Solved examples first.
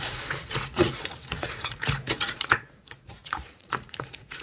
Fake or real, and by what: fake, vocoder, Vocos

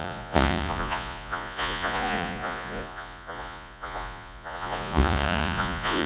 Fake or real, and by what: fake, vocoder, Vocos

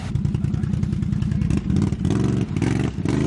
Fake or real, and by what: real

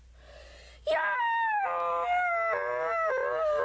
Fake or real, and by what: real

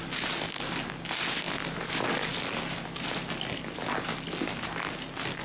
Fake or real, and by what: real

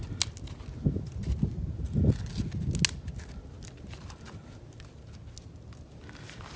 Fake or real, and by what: real